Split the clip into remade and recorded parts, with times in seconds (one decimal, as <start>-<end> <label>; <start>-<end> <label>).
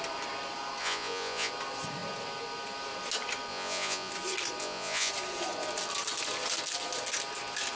0.0-0.8 recorded; 0.8-1.5 remade; 1.5-3.5 recorded; 3.5-4.1 remade; 4.1-4.6 recorded; 4.6-5.1 remade; 5.1-7.8 recorded